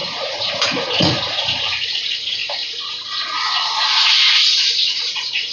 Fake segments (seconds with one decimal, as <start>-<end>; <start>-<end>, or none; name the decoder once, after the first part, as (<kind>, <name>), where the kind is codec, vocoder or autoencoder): 0.0-2.4 (vocoder, Vocos); 2.9-5.5